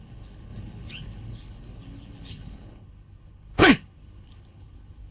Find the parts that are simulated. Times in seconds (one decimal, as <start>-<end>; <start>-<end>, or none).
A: 0.0-5.1